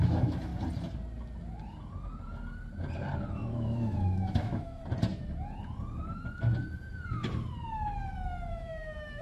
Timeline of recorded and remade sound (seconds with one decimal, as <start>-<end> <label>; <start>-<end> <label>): 0.0-0.5 remade; 0.5-3.3 recorded; 3.3-4.8 remade; 4.8-8.5 recorded; 8.5-9.2 remade